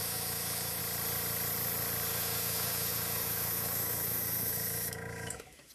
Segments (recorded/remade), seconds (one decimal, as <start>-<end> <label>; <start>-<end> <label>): 0.0-0.8 remade; 0.8-2.1 recorded; 2.1-5.7 remade